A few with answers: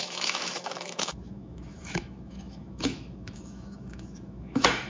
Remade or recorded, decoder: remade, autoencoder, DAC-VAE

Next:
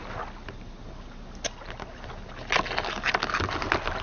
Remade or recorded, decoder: recorded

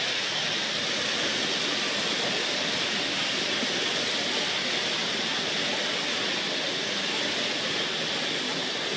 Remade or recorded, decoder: recorded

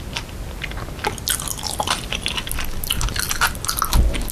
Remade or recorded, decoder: recorded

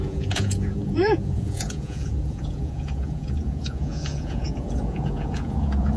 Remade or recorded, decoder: remade, vocoder, Vocos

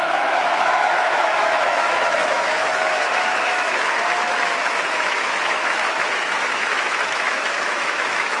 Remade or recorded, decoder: remade, autoencoder, DAC-VAE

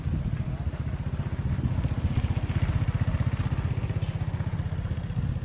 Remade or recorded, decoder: recorded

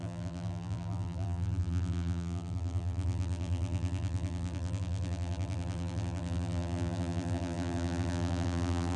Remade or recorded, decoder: remade, vocoder, BigVGAN v2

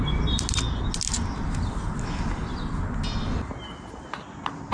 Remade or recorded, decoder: recorded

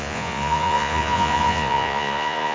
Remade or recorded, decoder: remade, vocoder, Vocos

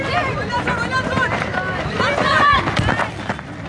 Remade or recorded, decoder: recorded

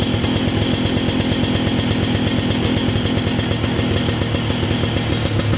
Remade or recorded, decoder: recorded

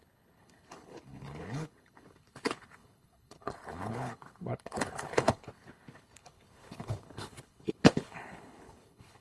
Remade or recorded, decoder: remade, codec, HILCodec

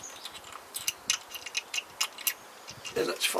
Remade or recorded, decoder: recorded